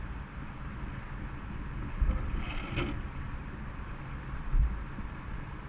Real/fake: real